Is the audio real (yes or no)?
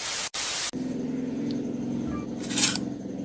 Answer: yes